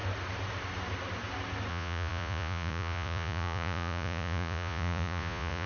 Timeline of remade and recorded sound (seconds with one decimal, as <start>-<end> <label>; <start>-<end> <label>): 0.0-1.7 recorded; 1.7-5.7 remade